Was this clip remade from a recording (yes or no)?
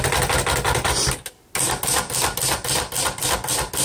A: no